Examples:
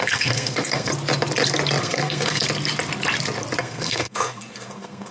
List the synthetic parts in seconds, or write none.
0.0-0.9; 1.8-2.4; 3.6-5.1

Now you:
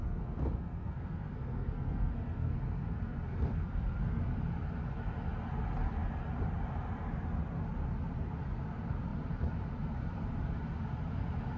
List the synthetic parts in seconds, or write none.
0.0-4.2

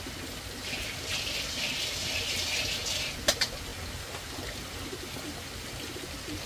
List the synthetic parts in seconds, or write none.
none

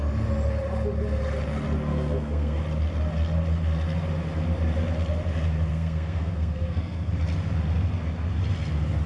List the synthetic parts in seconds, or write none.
1.9-2.6; 5.7-7.1

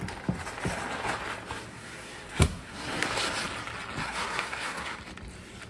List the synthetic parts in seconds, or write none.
1.7-3.1; 4.0-5.0

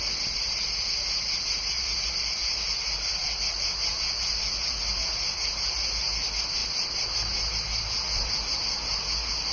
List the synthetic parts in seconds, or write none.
none